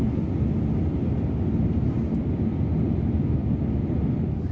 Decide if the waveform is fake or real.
real